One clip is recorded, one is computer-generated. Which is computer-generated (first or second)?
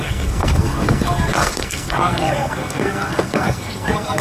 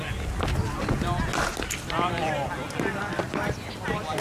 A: first